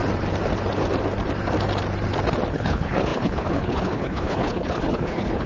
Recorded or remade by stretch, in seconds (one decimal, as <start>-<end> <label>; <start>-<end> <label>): 0.0-2.5 recorded; 2.5-5.5 remade